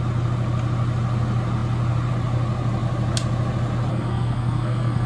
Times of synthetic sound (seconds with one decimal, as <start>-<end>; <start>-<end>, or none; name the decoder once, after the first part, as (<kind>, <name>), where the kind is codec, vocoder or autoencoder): 3.9-5.1 (codec, SNAC)